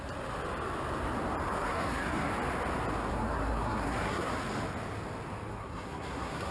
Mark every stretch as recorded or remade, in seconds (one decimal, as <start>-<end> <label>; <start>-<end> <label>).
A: 0.0-1.5 recorded; 1.5-2.3 remade; 2.3-3.1 recorded; 3.1-4.3 remade; 4.3-5.5 recorded; 5.5-6.5 remade